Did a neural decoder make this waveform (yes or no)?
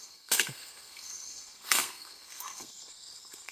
yes